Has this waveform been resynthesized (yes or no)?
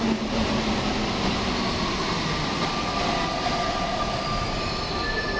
no